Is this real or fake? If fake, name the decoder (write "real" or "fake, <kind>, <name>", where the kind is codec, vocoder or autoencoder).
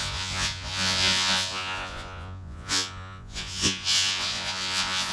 fake, vocoder, Vocos